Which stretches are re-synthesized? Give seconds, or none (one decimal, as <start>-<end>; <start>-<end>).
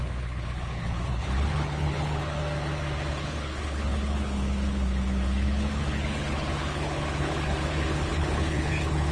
0.0-2.4; 3.1-9.1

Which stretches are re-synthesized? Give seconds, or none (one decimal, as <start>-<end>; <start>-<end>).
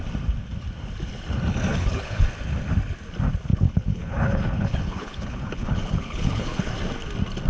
1.7-2.2; 3.5-6.7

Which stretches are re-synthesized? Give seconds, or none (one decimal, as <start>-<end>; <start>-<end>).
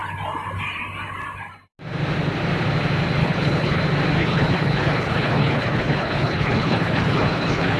3.2-3.8; 4.2-7.8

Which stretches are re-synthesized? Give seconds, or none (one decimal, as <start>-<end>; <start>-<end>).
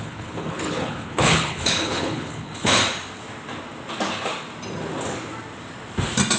0.0-2.8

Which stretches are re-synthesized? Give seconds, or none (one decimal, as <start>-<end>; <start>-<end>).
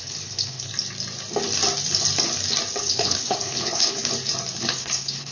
0.0-0.7; 2.8-4.0; 4.6-5.3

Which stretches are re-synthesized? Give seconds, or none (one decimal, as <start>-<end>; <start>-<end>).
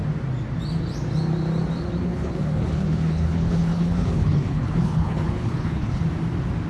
2.0-6.0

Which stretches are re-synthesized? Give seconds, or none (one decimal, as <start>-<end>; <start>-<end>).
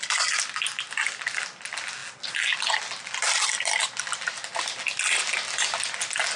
none